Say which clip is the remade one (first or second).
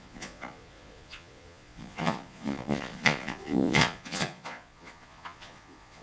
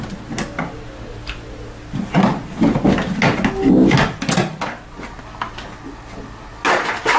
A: first